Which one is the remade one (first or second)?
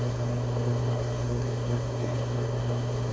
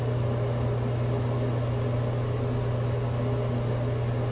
first